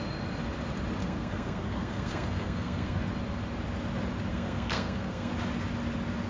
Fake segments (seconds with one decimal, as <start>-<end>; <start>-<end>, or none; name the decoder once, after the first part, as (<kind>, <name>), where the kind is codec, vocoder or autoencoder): 1.0-3.0 (codec, SNAC); 4.3-5.3